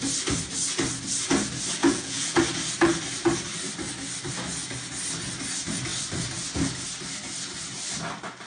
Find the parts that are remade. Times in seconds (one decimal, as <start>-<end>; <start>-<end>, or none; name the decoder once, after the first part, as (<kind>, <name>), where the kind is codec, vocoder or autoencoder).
1.8-2.4 (vocoder, Vocos)